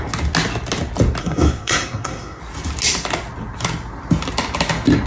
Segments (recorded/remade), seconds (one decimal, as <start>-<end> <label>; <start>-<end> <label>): 0.0-1.2 recorded; 1.2-2.4 remade; 2.4-5.1 recorded